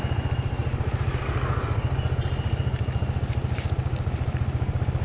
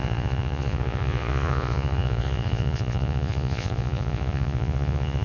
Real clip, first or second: first